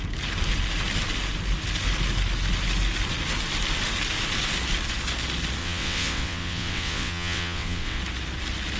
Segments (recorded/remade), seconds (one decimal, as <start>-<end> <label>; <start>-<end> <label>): 0.0-5.6 recorded; 5.6-8.0 remade; 8.0-8.8 recorded